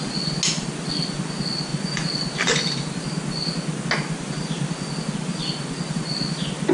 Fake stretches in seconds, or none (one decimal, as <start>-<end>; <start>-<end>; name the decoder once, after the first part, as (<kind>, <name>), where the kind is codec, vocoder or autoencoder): none